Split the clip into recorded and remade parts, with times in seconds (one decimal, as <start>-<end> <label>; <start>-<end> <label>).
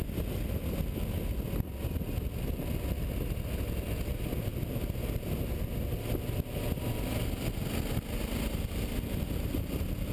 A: 0.0-10.1 recorded